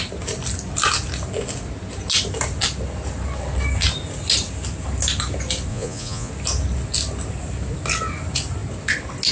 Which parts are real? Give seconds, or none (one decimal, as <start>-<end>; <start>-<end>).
0.0-5.7; 6.3-9.3